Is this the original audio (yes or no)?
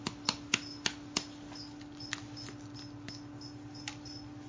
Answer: yes